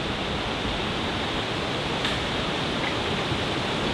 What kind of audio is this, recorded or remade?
recorded